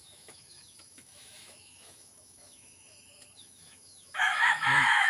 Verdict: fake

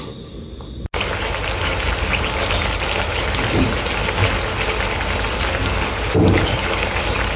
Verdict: real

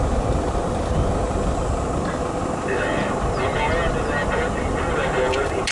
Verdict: real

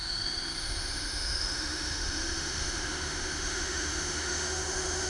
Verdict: fake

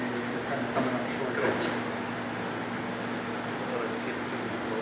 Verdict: real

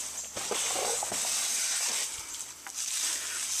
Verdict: real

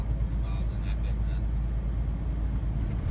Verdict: real